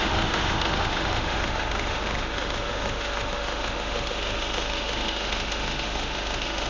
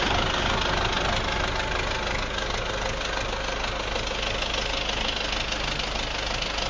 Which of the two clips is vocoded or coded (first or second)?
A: first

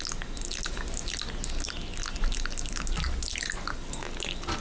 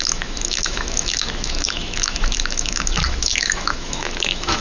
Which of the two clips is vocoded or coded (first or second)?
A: second